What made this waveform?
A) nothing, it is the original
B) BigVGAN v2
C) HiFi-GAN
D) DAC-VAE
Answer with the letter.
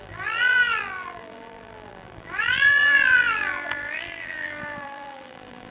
B